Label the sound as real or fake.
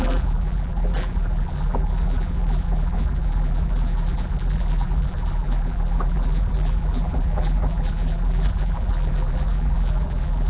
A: fake